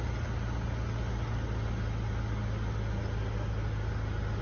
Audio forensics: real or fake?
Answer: real